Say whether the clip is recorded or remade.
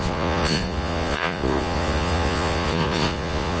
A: remade